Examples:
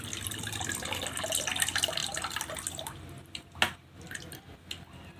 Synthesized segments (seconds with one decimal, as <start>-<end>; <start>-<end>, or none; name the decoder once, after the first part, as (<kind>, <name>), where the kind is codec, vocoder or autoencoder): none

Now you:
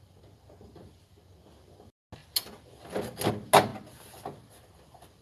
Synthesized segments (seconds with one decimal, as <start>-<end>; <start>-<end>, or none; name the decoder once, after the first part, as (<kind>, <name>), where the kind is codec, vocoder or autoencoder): none

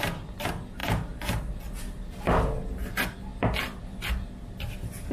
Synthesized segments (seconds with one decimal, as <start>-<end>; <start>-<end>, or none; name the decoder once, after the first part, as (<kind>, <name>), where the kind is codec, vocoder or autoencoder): none

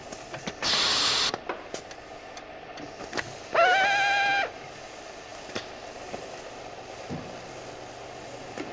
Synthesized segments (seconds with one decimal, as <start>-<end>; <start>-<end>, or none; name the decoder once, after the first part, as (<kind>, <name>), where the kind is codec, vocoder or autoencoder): none

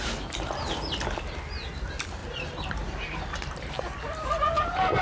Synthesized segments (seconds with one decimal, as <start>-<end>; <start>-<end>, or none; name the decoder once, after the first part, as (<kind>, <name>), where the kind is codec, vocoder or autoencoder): 0.0-0.5 (vocoder, BigVGAN v2); 2.2-3.7

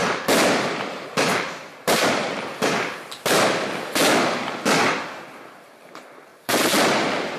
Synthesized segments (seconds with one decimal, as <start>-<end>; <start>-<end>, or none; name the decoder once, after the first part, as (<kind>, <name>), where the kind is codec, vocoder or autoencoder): 0.0-3.6 (vocoder, BigVGAN v2)

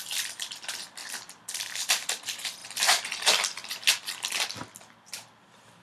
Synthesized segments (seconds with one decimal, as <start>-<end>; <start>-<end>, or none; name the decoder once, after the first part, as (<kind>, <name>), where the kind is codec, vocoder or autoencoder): none